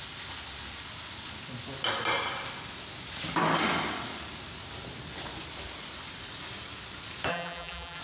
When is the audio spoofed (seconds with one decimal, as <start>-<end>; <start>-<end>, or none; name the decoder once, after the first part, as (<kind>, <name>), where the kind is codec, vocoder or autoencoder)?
7.3-8.0 (vocoder, BigVGAN v2)